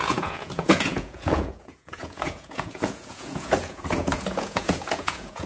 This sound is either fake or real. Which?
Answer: fake